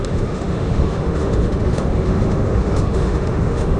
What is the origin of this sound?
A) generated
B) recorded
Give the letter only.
A